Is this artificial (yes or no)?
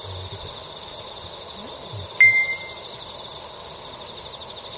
no